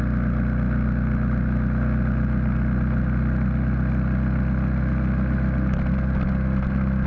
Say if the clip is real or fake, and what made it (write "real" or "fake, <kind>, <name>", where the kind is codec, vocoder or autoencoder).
real